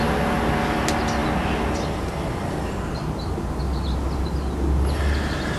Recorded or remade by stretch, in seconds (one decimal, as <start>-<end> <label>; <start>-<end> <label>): 0.0-5.6 recorded